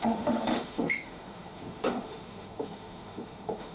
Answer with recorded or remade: remade